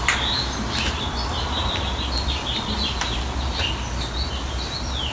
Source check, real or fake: real